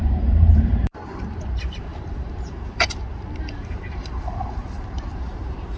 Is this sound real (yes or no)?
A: no